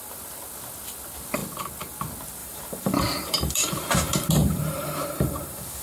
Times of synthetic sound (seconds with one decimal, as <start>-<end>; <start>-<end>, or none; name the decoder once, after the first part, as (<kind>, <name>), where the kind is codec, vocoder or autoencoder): 2.4-5.8 (vocoder, BigVGAN v2)